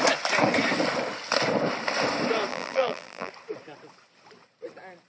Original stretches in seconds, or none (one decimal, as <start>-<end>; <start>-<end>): 0.0-2.5; 3.3-5.1